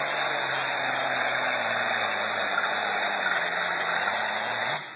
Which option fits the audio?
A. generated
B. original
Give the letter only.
B